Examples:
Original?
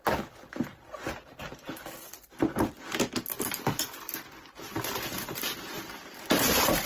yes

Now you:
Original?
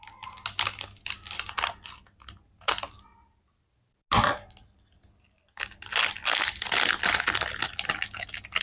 yes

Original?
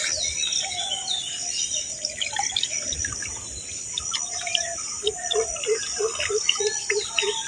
yes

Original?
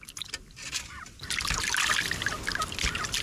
yes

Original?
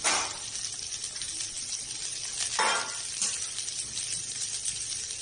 no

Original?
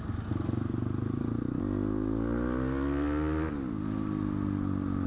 yes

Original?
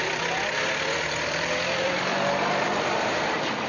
no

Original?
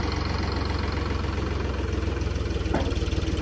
yes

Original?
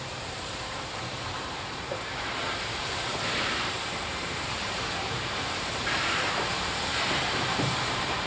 no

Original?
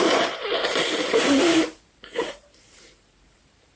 no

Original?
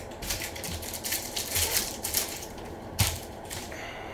no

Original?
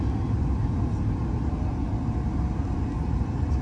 no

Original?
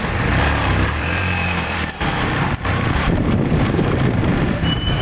no